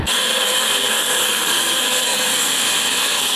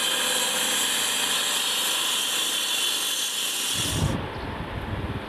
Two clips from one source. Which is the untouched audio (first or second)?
second